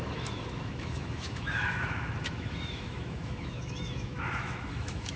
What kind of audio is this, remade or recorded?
remade